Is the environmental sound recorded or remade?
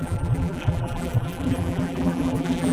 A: remade